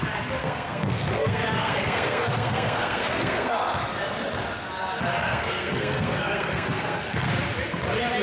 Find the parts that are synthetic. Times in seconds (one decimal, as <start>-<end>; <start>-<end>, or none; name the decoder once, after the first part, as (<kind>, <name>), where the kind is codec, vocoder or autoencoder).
0.4-3.8 (codec, SNAC); 5.2-7.3